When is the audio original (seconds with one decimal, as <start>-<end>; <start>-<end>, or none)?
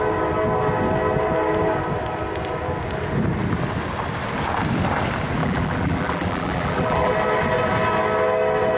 0.0-5.4; 7.1-8.8